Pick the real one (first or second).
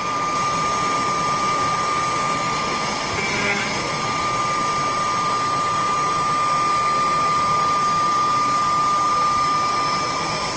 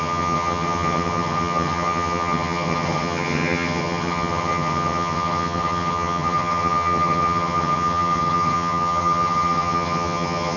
first